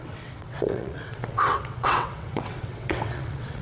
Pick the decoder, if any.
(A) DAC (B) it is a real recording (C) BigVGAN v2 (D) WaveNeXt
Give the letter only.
D